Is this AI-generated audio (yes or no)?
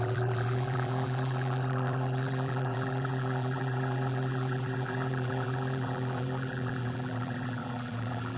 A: yes